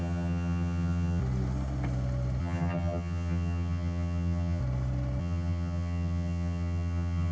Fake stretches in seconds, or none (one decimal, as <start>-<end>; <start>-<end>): 0.0-1.2; 2.4-4.6; 5.2-7.3